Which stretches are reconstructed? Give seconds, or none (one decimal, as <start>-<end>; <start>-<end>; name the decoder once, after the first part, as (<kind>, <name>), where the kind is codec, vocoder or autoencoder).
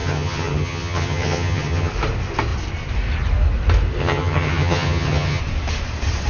0.0-1.9 (vocoder, HiFi-GAN); 4.0-5.4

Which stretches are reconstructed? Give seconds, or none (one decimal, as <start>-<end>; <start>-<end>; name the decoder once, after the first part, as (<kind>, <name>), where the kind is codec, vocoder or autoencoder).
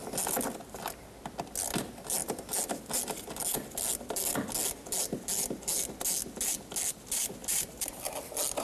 7.4-8.0 (vocoder, BigVGAN v2)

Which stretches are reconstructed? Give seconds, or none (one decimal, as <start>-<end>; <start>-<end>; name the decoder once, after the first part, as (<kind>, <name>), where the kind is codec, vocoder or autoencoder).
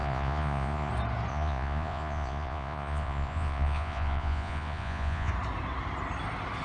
0.0-0.9 (vocoder, Vocos); 1.3-5.3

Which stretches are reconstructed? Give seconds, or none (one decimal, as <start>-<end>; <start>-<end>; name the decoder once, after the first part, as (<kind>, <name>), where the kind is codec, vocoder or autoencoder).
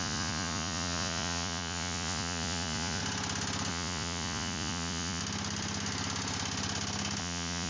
0.0-3.0 (vocoder, Vocos); 3.7-5.2; 7.2-7.7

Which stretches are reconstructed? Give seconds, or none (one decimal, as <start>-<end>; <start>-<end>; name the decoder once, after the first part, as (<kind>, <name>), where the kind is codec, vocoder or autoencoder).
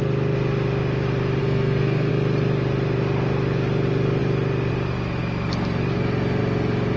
1.4-2.1 (codec, SNAC)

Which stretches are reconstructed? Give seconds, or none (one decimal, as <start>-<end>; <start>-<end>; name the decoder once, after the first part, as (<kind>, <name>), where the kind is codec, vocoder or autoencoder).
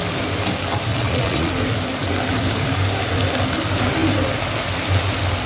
0.9-1.5 (vocoder, Vocos)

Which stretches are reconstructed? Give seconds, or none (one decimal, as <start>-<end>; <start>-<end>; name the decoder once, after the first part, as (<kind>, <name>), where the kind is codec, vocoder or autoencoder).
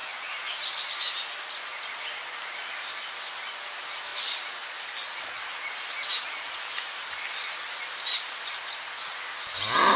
none